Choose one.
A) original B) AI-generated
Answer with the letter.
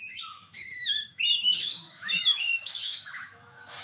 B